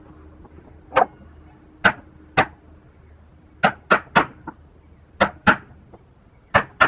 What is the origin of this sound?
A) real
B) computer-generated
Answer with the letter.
A